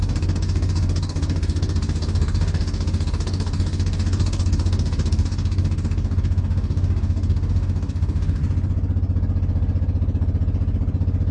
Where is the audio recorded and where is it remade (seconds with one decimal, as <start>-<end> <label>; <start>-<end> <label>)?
0.0-8.4 remade; 8.4-11.3 recorded